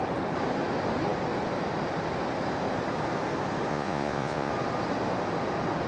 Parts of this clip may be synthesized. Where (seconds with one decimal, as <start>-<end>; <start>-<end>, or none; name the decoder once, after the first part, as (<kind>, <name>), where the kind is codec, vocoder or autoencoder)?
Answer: 3.7-4.5 (vocoder, Vocos)

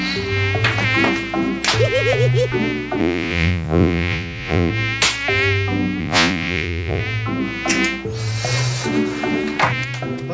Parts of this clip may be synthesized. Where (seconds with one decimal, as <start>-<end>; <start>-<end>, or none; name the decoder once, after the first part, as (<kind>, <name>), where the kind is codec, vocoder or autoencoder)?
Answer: 3.0-4.7 (vocoder, Vocos); 6.0-7.0

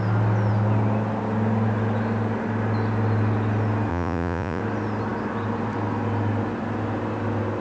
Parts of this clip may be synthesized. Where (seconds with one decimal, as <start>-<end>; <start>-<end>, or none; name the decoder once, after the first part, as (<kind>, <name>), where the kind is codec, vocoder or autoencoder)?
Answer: 3.9-4.6 (vocoder, Vocos)